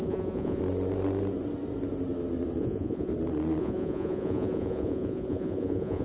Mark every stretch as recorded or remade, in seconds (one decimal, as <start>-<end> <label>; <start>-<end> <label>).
0.0-0.6 remade; 0.6-2.6 recorded; 2.6-3.1 remade; 3.1-3.6 recorded; 3.6-6.0 remade